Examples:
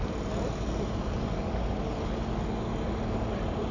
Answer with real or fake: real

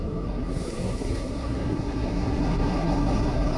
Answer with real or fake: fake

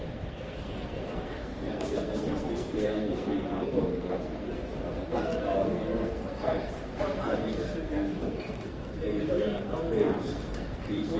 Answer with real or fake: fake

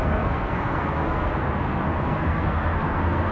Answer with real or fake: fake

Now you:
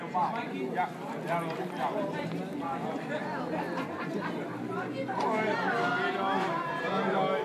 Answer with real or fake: real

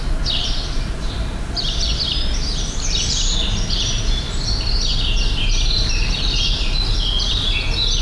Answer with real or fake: real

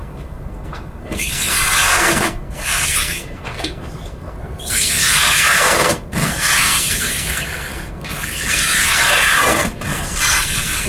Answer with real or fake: fake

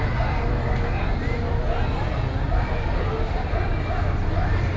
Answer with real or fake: real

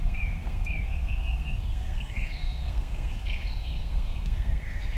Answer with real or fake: fake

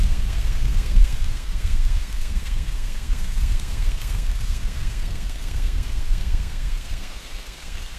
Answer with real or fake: fake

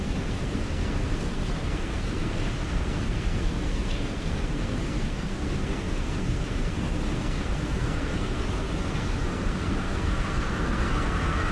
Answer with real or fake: fake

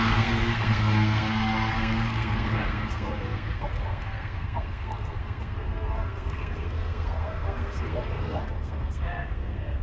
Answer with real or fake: fake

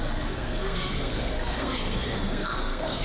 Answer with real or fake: fake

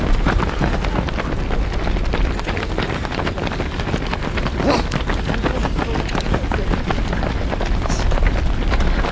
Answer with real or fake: real